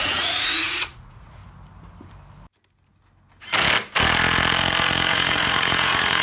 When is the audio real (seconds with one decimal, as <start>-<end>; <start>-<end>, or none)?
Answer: 1.4-5.1